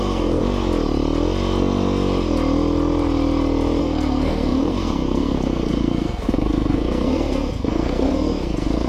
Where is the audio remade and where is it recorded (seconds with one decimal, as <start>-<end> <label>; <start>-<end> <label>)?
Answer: 0.0-0.4 remade; 0.4-3.8 recorded; 3.8-8.9 remade